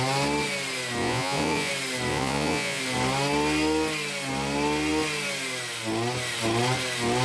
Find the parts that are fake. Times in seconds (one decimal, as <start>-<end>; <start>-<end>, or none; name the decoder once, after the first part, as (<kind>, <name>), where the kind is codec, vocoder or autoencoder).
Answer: 1.0-1.7 (vocoder, Vocos); 2.1-2.8